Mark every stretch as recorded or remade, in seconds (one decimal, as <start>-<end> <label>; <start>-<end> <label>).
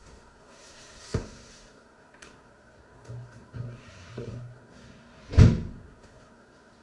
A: 0.0-5.2 remade; 5.2-5.7 recorded; 5.7-6.8 remade